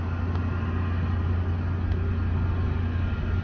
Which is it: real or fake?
real